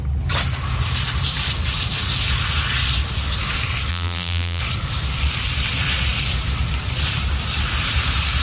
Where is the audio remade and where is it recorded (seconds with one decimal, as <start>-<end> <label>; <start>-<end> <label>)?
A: 0.0-3.9 recorded; 3.9-4.6 remade; 4.6-8.4 recorded